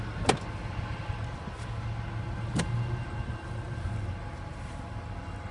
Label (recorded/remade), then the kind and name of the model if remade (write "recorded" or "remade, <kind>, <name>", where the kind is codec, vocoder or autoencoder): recorded